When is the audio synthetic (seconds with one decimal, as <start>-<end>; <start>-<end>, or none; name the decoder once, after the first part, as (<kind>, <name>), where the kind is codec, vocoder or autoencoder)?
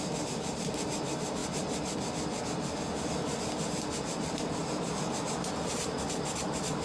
0.0-1.4 (vocoder, BigVGAN v2); 5.5-6.8